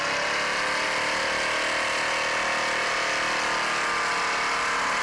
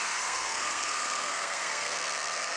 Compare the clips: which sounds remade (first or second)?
second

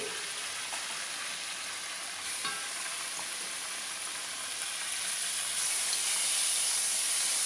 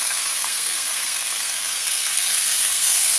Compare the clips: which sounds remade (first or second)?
second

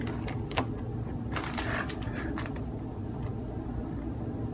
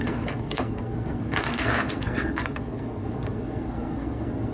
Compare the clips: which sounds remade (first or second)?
second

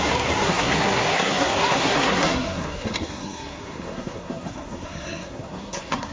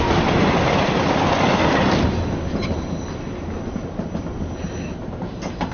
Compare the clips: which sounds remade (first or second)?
first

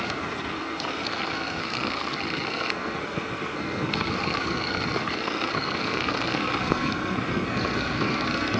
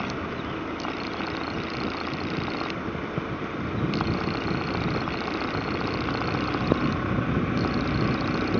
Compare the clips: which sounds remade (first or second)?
first